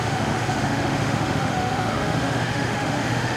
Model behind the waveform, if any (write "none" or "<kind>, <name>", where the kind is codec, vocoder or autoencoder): autoencoder, DAC-VAE